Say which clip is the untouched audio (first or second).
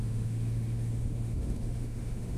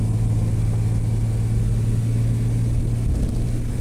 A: second